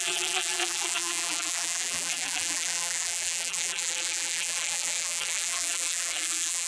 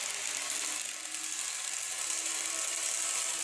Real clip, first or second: second